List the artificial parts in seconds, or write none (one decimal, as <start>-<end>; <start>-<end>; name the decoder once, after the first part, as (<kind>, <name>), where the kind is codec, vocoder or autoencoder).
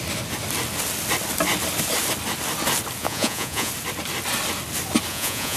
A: 3.0-3.7 (vocoder, Vocos); 5.1-5.6